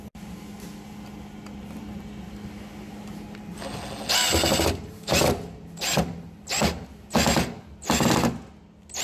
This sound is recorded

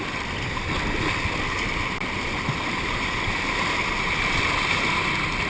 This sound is recorded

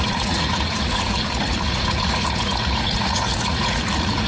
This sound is remade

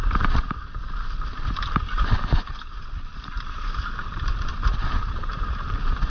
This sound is remade